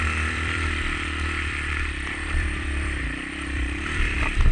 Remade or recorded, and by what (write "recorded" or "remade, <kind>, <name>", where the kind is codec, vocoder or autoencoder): remade, vocoder, BigVGAN v2